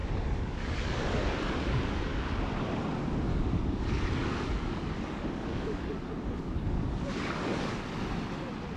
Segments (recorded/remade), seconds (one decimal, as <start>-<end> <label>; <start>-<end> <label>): 0.0-2.4 remade; 2.4-3.3 recorded; 3.3-7.8 remade; 7.8-8.8 recorded